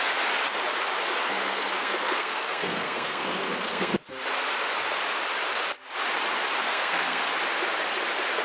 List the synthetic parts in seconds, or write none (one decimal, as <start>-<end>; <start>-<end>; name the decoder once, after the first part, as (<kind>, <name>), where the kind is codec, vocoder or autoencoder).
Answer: 1.2-3.9 (codec, SNAC); 6.6-7.3